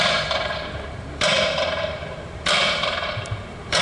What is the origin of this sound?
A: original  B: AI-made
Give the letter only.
B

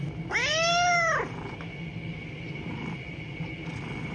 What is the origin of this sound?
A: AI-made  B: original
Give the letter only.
B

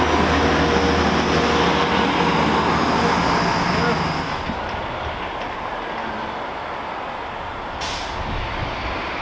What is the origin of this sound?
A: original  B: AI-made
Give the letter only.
A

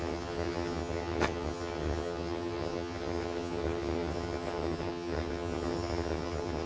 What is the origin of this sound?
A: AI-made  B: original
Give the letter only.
A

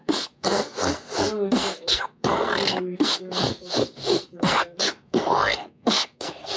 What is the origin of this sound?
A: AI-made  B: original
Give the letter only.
A